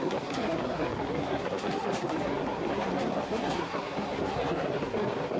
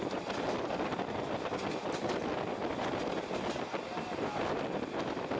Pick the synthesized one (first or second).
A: first